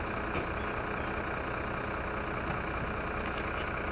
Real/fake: real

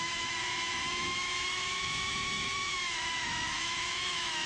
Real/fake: fake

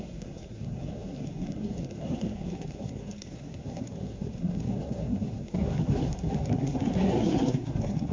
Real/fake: fake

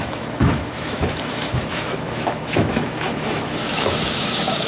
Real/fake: fake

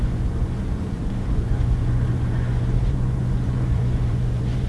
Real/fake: fake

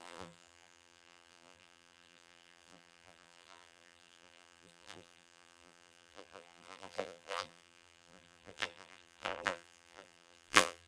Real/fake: fake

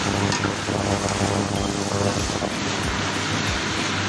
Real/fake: real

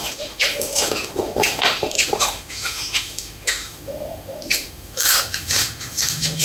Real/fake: fake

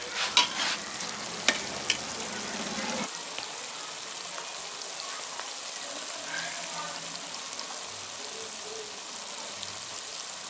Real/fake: real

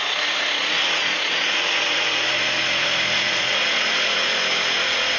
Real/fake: fake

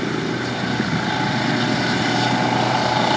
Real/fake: real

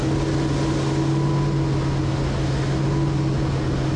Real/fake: real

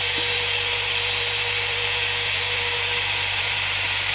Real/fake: fake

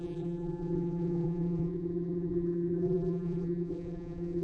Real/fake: fake